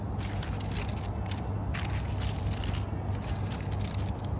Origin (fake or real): real